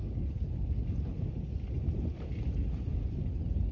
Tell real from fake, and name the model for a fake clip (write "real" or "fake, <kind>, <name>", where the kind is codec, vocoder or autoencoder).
real